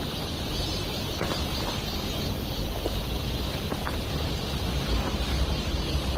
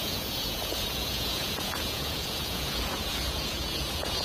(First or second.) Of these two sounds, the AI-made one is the second